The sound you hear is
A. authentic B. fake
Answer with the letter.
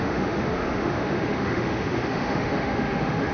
B